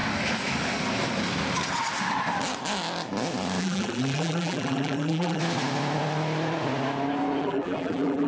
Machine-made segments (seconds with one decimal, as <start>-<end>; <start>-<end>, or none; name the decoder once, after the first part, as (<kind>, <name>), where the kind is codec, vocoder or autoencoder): 3.6-5.4 (vocoder, BigVGAN v2); 7.4-8.3